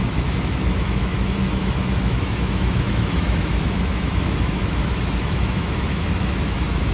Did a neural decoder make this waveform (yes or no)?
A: yes